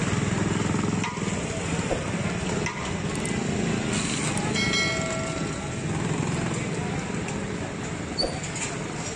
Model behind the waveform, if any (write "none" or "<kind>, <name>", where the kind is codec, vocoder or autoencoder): none